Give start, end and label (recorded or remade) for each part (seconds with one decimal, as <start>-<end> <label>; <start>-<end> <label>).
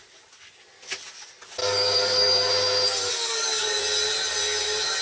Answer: 0.0-1.6 recorded; 1.6-2.5 remade; 2.5-3.1 recorded; 3.1-3.8 remade; 3.8-5.0 recorded